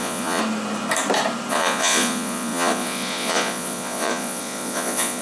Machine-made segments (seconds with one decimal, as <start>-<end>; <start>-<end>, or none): 0.0-0.4; 1.5-5.2